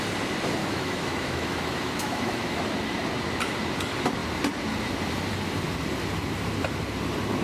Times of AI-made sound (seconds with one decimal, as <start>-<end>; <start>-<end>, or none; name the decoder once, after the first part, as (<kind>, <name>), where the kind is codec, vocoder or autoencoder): 0.6-2.6 (autoencoder, DAC-VAE)